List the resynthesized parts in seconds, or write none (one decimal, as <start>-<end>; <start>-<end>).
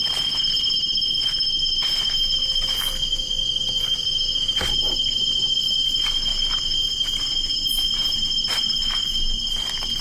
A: none